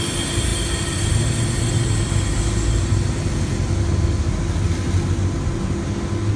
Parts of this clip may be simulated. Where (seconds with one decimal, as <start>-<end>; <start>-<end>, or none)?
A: none